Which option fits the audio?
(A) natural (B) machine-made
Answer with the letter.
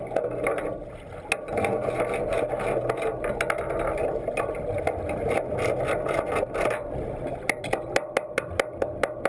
A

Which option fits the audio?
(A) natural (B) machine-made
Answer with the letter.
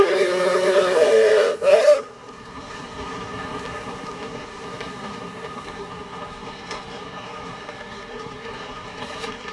B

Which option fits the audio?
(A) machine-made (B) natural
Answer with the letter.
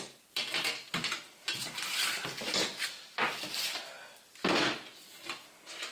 B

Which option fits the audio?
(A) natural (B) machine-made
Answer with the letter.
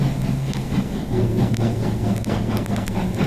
B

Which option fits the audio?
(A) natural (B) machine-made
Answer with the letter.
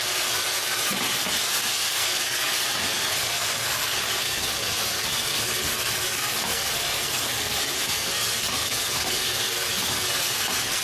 B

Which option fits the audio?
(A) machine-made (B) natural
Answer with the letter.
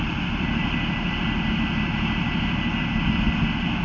B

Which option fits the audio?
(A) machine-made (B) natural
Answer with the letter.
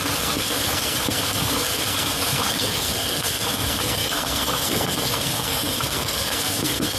A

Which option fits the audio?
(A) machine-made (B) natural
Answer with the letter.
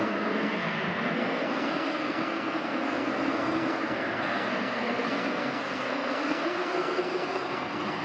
A